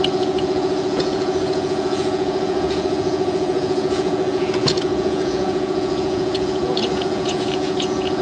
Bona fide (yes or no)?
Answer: no